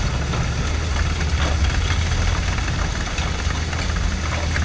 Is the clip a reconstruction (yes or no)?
no